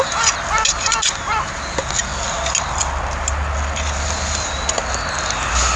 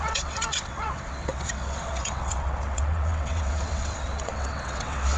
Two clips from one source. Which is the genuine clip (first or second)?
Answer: first